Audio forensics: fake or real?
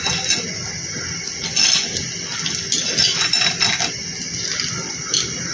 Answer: real